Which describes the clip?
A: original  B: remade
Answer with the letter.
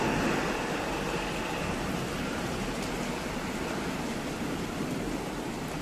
A